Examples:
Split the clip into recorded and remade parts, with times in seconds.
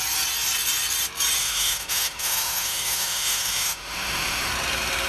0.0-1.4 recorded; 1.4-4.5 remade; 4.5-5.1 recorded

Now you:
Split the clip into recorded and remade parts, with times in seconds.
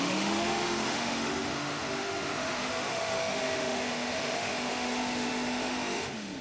0.0-6.4 remade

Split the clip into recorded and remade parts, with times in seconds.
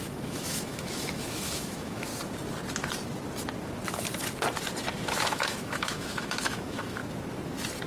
0.0-2.1 remade; 2.1-5.1 recorded; 5.1-7.0 remade; 7.0-7.9 recorded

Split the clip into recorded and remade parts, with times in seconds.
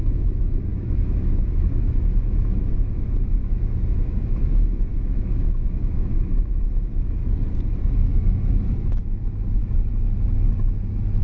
0.0-7.2 remade; 7.2-7.9 recorded; 7.9-9.6 remade; 9.6-11.2 recorded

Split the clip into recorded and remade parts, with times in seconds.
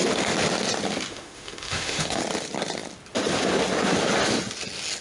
0.0-1.1 recorded; 1.1-2.2 remade; 2.2-5.0 recorded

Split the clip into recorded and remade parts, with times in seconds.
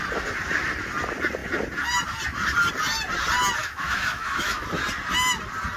0.0-3.6 recorded; 3.6-4.6 remade; 4.6-5.8 recorded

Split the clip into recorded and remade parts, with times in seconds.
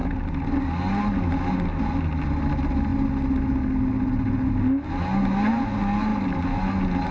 0.0-7.1 recorded